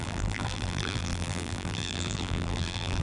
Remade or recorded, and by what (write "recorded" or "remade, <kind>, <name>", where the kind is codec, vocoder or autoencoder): remade, vocoder, BigVGAN v2